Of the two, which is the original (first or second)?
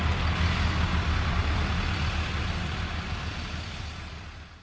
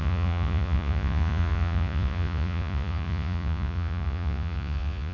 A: first